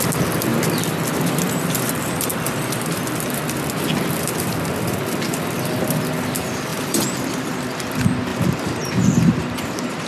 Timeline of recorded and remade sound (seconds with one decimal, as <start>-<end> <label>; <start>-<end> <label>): 0.0-8.3 recorded; 8.3-9.6 remade; 9.6-10.1 recorded